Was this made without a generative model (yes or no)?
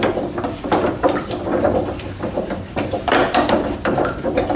no